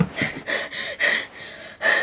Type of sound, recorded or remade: recorded